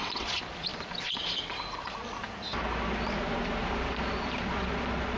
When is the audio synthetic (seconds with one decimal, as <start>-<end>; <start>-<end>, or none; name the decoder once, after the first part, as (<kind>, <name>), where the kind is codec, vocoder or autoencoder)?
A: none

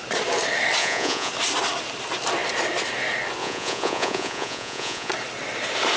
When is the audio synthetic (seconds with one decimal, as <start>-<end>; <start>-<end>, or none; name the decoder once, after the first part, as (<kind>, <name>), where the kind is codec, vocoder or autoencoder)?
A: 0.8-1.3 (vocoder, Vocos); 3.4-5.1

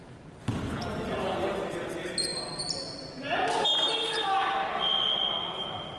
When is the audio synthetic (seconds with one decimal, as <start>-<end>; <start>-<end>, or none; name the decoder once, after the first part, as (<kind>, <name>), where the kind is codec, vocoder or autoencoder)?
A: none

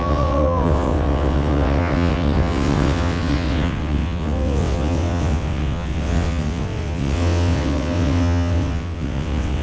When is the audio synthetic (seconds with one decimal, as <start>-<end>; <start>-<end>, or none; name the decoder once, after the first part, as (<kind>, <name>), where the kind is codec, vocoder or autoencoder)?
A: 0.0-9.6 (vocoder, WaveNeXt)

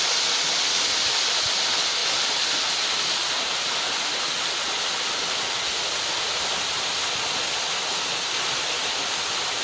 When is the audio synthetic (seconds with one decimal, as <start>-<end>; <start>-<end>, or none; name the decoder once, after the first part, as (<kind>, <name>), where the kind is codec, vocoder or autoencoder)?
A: none

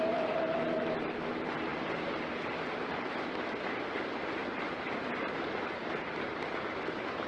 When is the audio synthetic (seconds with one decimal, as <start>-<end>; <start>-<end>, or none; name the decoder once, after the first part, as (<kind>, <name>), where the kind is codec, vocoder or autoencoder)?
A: 0.0-1.7 (vocoder, BigVGAN v2); 2.8-7.3

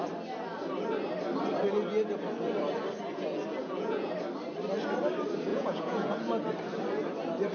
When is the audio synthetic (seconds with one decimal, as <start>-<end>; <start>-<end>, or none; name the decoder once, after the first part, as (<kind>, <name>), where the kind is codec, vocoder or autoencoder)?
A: 3.6-4.1 (vocoder, Vocos); 5.5-6.1